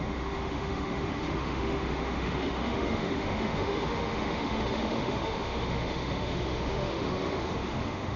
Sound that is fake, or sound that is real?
fake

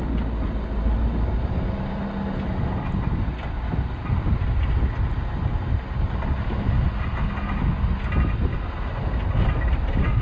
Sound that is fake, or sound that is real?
real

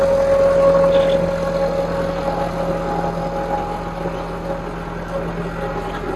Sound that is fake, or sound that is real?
real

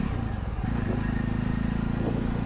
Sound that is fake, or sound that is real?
real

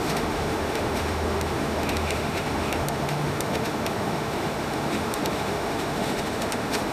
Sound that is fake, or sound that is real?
fake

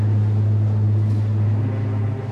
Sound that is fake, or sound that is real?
real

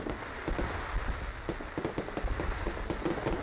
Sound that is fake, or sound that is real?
real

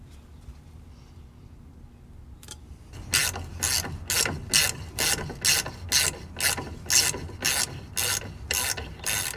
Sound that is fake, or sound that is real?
real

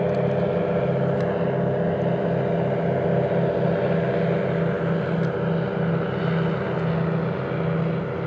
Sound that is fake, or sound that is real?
real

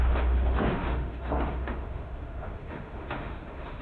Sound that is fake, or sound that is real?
fake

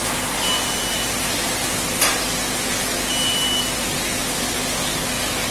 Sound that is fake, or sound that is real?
real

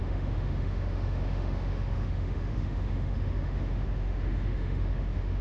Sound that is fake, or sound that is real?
fake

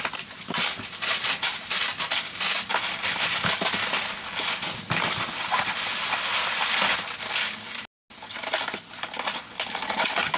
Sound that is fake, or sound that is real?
real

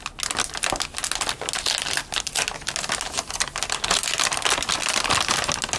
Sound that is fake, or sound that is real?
real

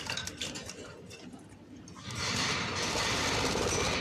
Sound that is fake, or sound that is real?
real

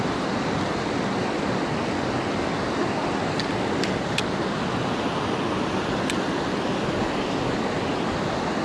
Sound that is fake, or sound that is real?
real